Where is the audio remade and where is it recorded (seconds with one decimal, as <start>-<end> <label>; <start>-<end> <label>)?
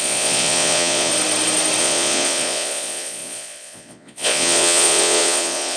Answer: 0.0-1.1 remade; 1.1-1.8 recorded; 1.8-5.8 remade